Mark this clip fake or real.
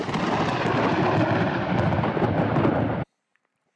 real